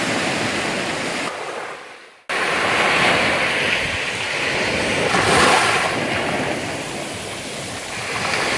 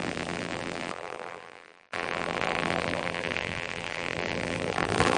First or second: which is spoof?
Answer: second